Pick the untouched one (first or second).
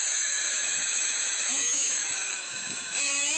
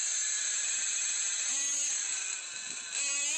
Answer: second